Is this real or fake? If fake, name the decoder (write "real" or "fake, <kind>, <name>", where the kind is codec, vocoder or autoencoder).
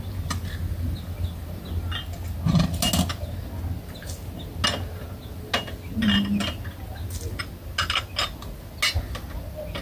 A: real